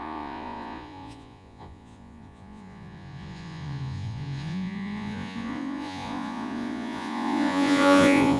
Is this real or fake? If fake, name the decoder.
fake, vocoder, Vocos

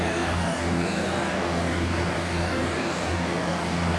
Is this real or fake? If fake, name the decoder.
fake, codec, DAC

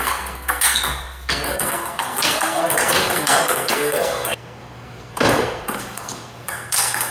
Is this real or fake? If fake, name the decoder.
fake, codec, SNAC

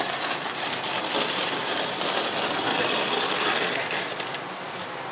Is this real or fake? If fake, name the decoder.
real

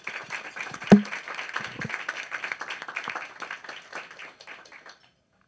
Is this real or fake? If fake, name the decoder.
real